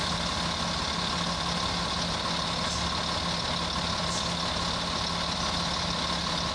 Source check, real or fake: real